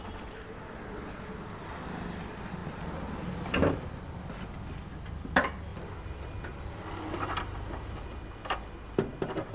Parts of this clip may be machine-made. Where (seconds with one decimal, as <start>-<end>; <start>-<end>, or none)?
none